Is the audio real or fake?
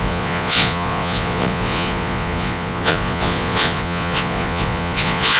fake